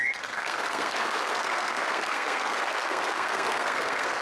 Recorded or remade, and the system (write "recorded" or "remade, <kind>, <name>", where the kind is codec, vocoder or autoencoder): remade, codec, SNAC